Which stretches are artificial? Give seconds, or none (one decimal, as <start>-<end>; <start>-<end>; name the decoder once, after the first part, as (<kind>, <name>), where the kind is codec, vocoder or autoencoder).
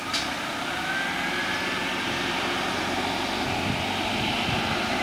none